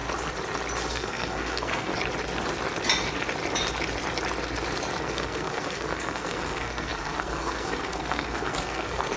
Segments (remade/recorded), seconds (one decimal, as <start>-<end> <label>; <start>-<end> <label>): 0.0-0.9 recorded; 0.9-1.9 remade; 1.9-5.0 recorded; 5.0-9.2 remade